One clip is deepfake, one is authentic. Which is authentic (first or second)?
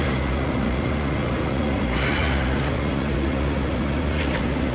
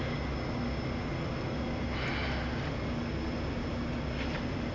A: second